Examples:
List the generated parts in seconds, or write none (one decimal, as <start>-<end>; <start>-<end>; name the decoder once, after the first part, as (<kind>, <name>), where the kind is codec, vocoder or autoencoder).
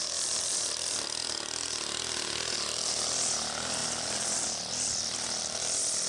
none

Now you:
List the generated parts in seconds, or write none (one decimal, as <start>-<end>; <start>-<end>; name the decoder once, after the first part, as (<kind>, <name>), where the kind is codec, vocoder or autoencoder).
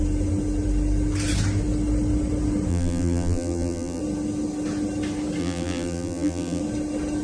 2.7-4.0 (vocoder, BigVGAN v2); 5.4-6.6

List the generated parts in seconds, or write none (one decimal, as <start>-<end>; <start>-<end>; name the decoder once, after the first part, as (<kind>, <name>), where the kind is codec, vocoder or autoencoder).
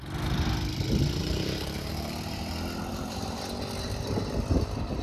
1.2-1.9 (vocoder, BigVGAN v2); 2.9-3.4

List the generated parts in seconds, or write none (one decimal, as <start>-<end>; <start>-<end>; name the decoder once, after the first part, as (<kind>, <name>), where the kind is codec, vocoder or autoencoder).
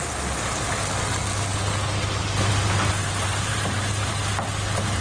3.0-4.1 (vocoder, BigVGAN v2)